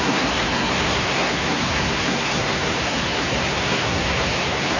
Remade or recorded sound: remade